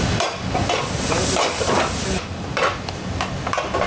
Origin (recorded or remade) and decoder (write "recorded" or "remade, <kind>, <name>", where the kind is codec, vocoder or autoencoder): recorded